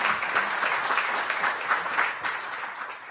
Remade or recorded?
recorded